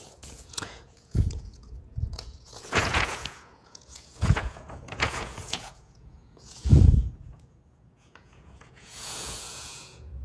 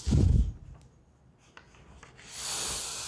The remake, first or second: first